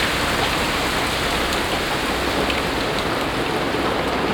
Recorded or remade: recorded